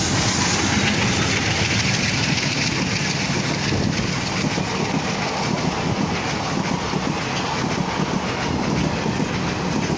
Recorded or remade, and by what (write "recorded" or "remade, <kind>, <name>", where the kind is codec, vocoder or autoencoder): recorded